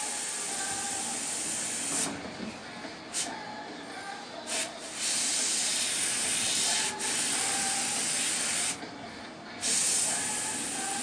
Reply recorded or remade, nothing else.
recorded